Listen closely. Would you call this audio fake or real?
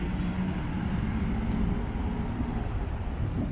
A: real